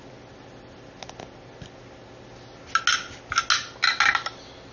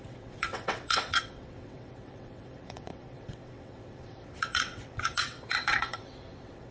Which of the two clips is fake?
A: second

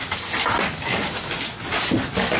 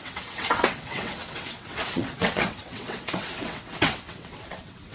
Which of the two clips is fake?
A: second